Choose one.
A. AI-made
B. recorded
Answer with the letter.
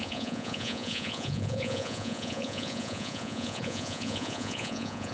A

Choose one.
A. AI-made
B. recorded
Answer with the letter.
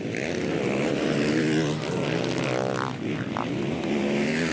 B